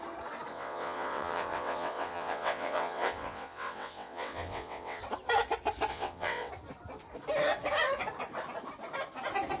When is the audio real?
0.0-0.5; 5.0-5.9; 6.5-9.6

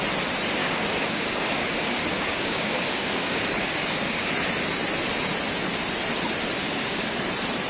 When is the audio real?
0.0-0.6; 4.3-6.6; 7.2-7.7

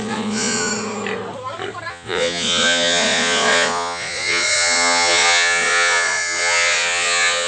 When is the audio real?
0.7-1.9

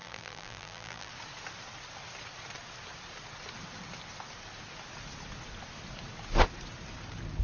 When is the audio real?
1.1-7.4

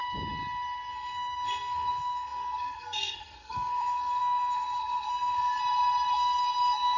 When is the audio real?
0.0-0.9; 5.6-6.1

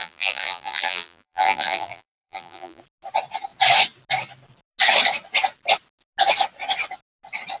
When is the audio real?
2.8-7.6

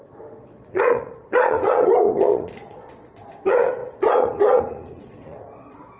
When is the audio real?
none

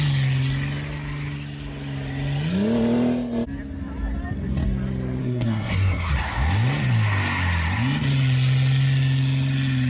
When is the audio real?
0.0-5.2; 6.1-9.9